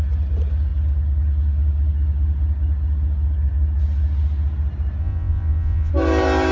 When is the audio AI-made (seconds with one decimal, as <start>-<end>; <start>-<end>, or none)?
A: 5.0-5.9